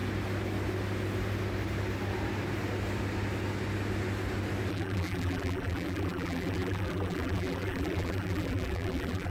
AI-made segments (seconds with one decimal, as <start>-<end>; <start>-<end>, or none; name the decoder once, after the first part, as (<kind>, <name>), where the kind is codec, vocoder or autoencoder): 4.7-9.3 (vocoder, BigVGAN v2)